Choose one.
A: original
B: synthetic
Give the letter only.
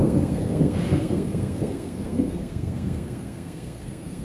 B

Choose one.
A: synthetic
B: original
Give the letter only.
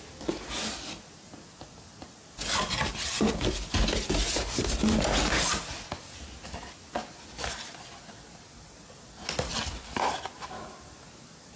B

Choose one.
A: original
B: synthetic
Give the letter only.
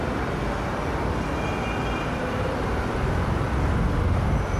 A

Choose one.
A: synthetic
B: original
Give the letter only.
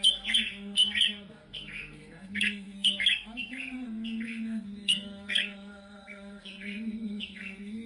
A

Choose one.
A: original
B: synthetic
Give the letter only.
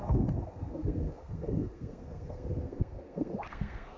B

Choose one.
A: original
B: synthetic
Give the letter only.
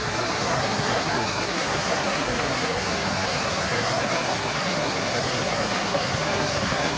B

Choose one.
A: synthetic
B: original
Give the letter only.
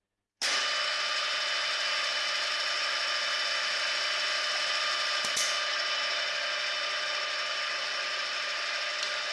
B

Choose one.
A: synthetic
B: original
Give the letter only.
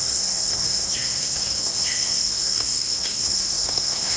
A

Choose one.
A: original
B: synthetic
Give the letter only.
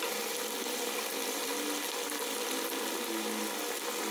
A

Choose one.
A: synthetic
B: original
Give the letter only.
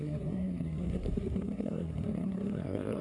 A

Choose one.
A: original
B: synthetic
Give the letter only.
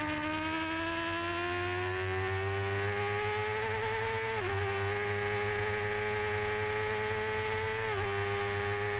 A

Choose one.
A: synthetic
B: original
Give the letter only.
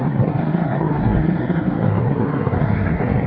A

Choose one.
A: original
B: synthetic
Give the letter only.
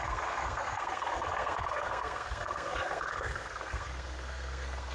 B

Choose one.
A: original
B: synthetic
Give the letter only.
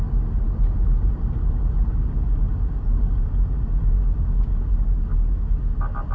A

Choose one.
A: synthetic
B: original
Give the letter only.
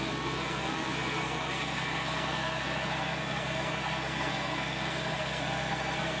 A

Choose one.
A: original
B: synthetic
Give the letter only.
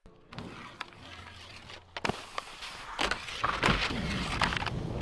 A